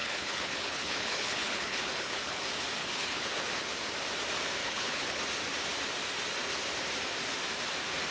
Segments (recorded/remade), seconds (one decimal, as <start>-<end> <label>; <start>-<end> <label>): 0.0-2.4 remade; 2.4-2.8 recorded; 2.8-3.4 remade; 3.4-4.6 recorded; 4.6-5.2 remade; 5.2-8.1 recorded